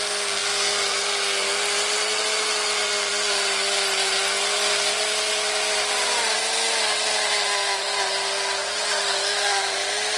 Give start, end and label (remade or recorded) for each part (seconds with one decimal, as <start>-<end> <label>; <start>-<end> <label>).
0.0-10.2 recorded